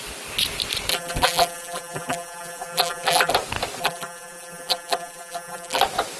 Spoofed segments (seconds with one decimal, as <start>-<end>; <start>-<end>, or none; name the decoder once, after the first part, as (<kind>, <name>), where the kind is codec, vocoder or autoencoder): 0.9-3.3 (vocoder, BigVGAN v2); 3.8-5.8